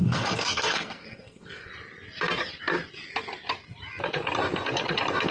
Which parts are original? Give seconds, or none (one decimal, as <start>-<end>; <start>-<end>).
1.7-5.3